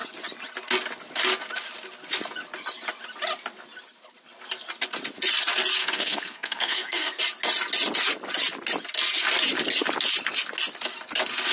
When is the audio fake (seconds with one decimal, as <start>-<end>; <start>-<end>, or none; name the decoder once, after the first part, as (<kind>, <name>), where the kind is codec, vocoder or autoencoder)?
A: 5.8-7.2 (codec, SNAC)